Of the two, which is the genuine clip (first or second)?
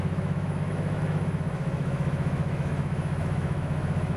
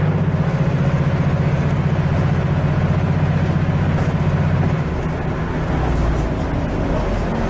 second